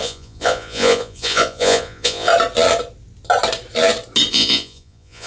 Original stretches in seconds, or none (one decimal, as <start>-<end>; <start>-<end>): 2.3-4.3